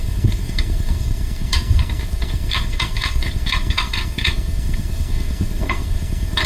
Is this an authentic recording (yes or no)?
no